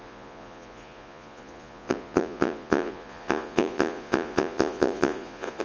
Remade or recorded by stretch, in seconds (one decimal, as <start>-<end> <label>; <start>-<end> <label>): 0.0-5.6 remade